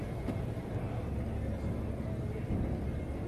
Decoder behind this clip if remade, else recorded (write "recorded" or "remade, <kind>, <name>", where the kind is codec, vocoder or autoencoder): recorded